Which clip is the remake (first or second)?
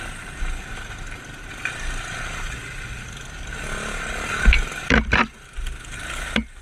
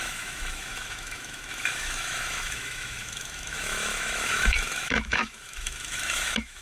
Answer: second